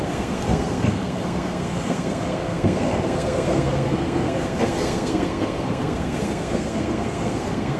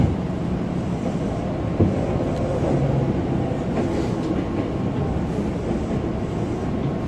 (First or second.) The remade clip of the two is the first